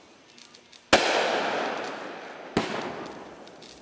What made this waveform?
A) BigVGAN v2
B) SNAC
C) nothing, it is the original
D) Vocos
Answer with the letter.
C